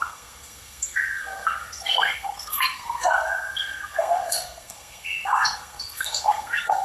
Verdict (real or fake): fake